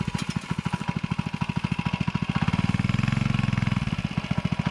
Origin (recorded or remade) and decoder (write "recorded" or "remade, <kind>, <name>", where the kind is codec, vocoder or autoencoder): recorded